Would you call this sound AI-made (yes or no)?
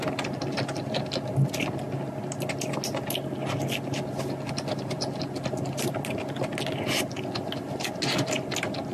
no